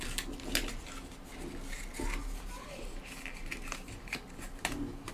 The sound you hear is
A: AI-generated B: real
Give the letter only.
B